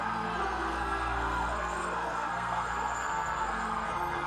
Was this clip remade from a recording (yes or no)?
yes